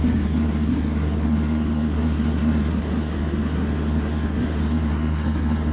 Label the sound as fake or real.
fake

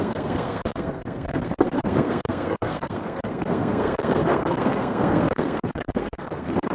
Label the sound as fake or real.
fake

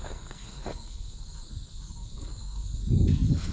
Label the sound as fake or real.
fake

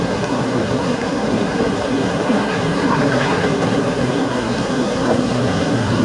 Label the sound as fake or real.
fake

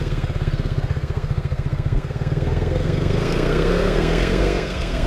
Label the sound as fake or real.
fake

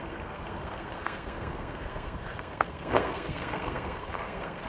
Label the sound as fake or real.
fake